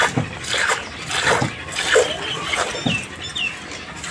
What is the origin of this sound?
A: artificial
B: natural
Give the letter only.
B